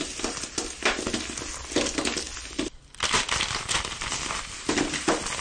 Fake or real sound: real